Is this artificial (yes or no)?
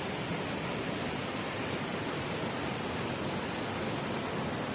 no